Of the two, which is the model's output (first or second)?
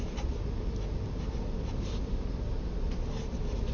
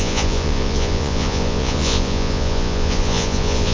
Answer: second